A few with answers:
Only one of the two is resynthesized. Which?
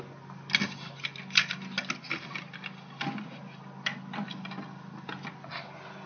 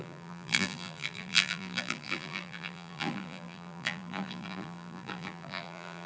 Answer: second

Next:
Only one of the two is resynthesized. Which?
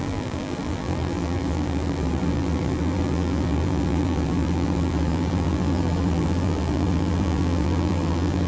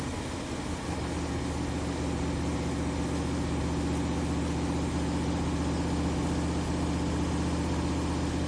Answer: first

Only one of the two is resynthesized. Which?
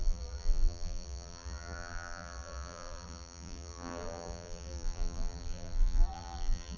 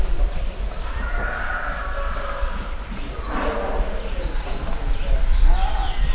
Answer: first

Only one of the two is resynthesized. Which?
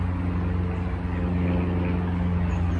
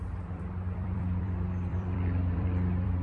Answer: second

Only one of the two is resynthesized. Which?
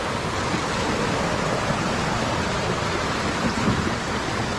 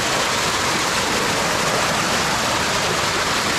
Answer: second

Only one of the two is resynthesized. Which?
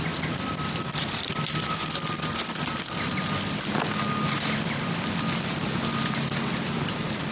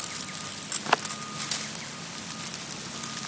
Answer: first